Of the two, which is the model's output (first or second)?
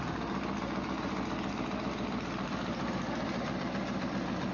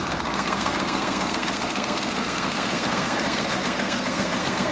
second